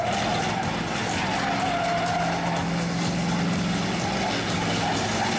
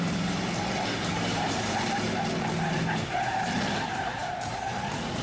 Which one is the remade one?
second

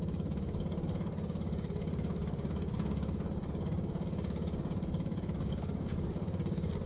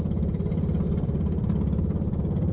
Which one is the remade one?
first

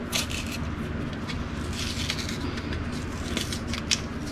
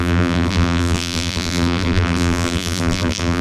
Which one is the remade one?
second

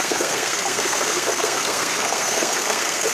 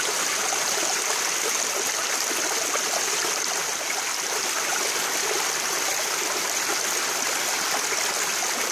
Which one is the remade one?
first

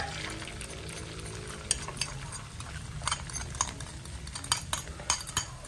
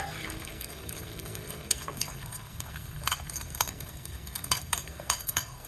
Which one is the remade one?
second